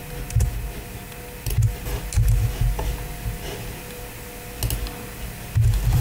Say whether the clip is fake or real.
real